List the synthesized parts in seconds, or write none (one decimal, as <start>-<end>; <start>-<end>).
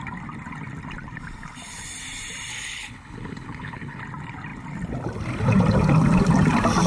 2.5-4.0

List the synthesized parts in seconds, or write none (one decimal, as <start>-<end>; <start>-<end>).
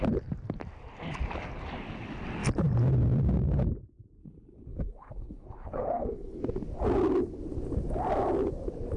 4.2-6.4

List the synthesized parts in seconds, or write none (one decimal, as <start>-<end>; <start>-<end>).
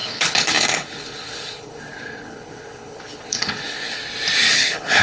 0.0-4.0; 4.5-5.0